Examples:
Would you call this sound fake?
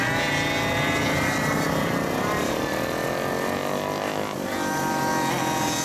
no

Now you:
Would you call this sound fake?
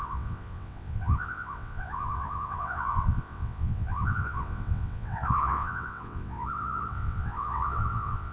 yes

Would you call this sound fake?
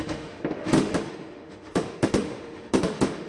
yes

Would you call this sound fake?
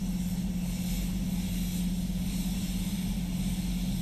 no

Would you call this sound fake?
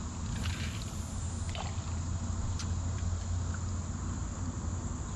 no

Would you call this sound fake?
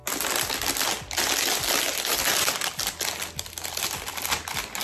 no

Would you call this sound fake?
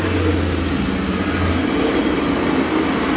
no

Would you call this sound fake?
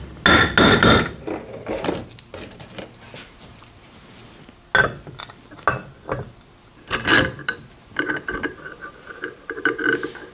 no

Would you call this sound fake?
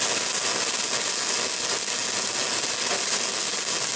no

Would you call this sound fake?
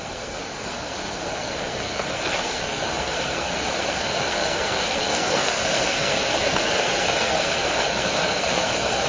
yes